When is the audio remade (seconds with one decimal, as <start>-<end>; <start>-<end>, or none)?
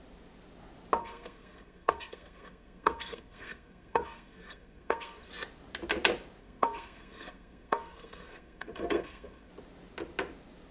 1.0-5.3; 6.4-9.5